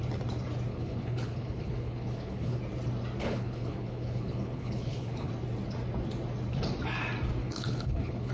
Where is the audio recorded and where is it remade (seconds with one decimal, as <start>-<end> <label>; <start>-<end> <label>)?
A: 0.0-0.7 recorded; 0.7-2.6 remade; 2.6-3.2 recorded; 3.2-5.3 remade; 5.3-7.4 recorded; 7.4-8.3 remade

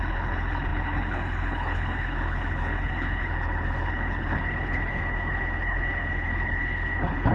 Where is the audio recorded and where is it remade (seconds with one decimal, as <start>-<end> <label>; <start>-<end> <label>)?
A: 0.0-7.3 remade

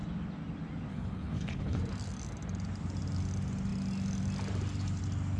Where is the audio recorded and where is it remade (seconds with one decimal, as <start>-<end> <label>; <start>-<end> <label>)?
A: 0.0-0.9 recorded; 0.9-1.8 remade; 1.8-5.4 recorded

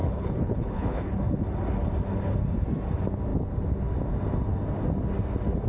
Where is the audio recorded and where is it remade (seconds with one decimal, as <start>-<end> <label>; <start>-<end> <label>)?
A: 0.0-1.2 remade; 1.2-5.7 recorded

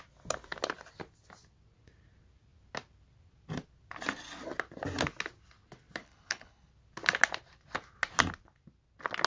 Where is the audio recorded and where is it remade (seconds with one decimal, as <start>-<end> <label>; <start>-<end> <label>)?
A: 0.0-6.0 recorded; 6.0-6.7 remade; 6.7-9.3 recorded

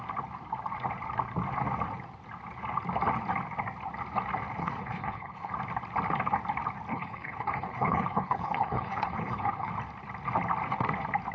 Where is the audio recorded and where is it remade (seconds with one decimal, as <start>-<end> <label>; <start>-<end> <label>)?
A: 0.0-4.6 recorded; 4.6-5.5 remade; 5.5-6.9 recorded; 6.9-9.7 remade; 9.7-11.3 recorded

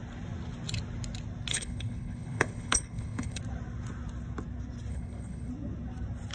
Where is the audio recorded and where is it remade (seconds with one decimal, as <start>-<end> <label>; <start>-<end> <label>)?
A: 0.0-1.5 recorded; 1.5-3.4 remade; 3.4-4.9 recorded; 4.9-5.5 remade; 5.5-6.3 recorded

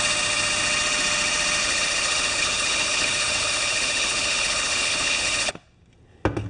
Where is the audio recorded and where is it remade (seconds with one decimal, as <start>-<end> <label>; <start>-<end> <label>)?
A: 0.0-1.6 recorded; 1.6-5.5 remade; 5.5-6.5 recorded